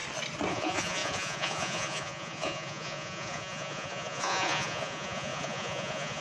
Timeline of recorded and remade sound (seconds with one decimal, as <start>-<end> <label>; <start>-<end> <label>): 0.0-0.5 recorded; 0.5-6.2 remade